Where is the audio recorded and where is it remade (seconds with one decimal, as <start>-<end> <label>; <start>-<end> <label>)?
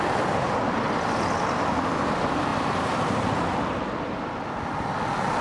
0.0-2.5 recorded; 2.5-3.6 remade; 3.6-5.4 recorded